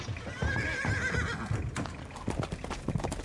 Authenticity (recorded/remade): recorded